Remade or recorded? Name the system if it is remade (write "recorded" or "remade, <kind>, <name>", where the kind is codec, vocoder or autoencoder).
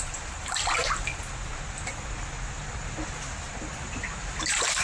recorded